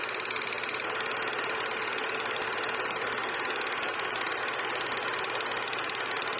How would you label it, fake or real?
real